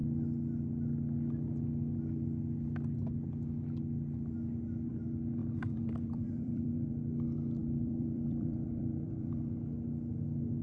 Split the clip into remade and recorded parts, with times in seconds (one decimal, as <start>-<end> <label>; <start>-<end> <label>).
0.0-5.4 recorded; 5.4-6.9 remade; 6.9-7.6 recorded; 7.6-9.4 remade; 9.4-10.6 recorded